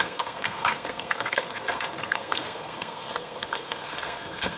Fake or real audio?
fake